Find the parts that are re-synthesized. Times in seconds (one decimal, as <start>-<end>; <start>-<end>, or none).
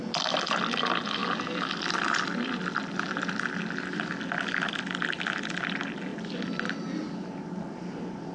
none